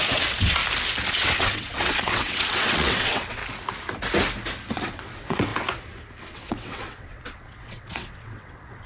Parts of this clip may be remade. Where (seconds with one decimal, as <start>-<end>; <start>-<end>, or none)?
0.0-0.6; 1.1-3.4; 4.7-5.5; 6.2-8.9